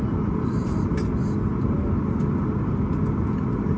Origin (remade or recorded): recorded